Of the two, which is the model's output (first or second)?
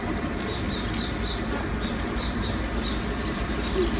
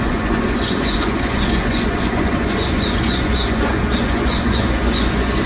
second